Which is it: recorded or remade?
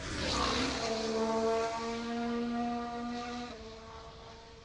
recorded